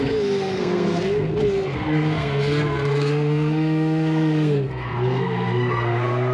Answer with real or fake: fake